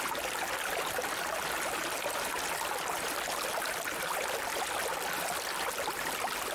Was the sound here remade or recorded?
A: recorded